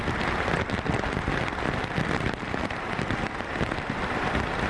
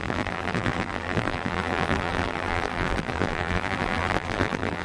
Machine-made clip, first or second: second